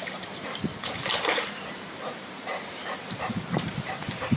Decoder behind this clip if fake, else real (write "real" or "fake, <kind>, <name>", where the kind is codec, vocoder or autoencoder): fake, vocoder, BigVGAN v2